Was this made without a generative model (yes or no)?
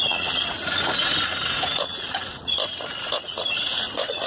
no